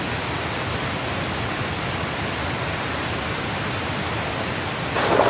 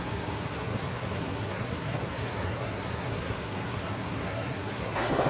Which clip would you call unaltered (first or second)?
first